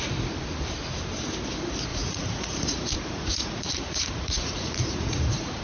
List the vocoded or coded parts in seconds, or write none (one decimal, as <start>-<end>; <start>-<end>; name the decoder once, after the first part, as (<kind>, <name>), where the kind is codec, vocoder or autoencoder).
1.9-5.6 (vocoder, Vocos)